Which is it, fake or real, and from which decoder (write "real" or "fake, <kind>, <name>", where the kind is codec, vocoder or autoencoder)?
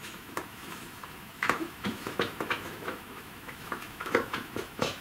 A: fake, autoencoder, DAC-VAE